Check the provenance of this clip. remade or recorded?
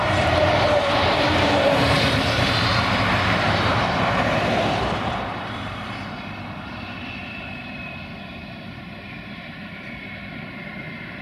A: remade